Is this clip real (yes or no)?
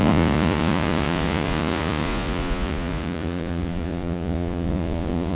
no